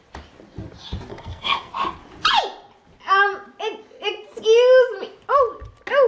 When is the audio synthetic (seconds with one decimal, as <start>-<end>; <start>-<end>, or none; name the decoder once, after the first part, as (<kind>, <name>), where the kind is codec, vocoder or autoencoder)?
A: 1.1-1.7 (codec, SNAC)